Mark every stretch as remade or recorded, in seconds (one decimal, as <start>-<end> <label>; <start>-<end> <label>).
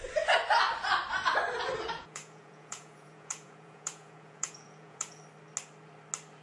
0.0-2.0 recorded; 2.0-5.2 remade; 5.2-6.4 recorded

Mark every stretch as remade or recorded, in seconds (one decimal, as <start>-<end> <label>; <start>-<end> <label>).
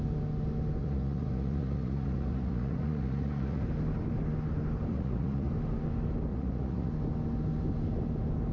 0.0-0.8 recorded; 0.8-3.6 remade; 3.6-4.9 recorded; 4.9-5.5 remade; 5.5-6.3 recorded; 6.3-6.9 remade; 6.9-8.5 recorded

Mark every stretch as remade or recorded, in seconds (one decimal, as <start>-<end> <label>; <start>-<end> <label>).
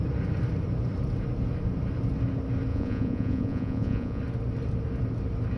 0.0-2.7 recorded; 2.7-4.2 remade; 4.2-5.6 recorded